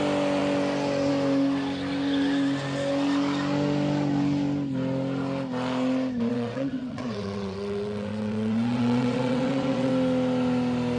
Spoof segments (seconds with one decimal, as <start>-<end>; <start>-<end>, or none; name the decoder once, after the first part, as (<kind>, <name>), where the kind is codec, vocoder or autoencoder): 6.3-9.9 (vocoder, WaveNeXt)